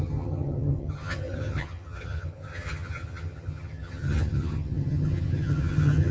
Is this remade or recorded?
remade